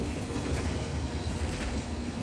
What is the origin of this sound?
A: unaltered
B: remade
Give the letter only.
B